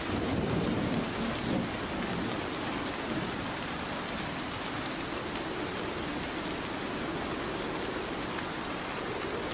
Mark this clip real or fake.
real